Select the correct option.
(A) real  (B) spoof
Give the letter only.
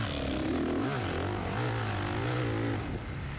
A